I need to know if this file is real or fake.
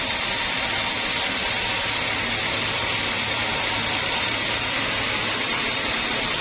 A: fake